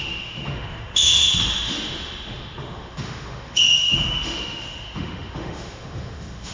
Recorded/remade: remade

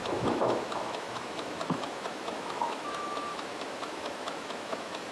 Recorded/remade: remade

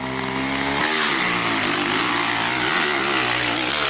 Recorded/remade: recorded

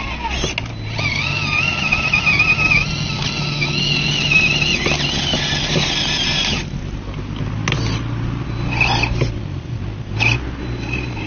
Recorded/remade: recorded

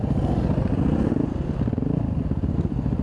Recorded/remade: recorded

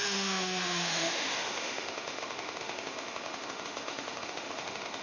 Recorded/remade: remade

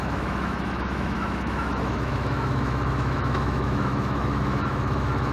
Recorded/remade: remade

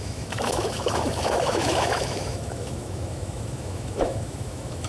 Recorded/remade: remade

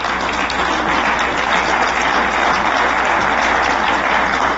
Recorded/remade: recorded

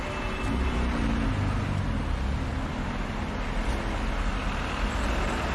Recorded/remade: recorded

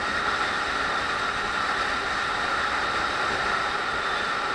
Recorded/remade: recorded